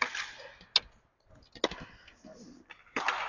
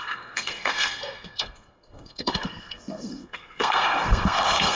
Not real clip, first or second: second